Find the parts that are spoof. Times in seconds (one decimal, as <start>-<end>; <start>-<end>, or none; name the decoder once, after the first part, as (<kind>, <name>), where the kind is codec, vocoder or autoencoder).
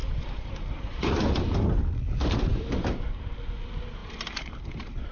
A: 0.0-0.9 (vocoder, BigVGAN v2); 4.0-5.1